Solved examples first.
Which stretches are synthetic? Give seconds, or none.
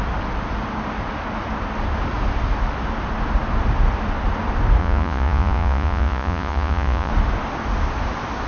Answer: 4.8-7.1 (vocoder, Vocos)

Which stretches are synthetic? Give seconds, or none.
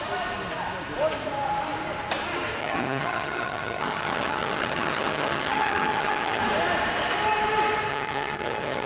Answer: 2.6-6.4 (vocoder, HiFi-GAN); 7.9-8.9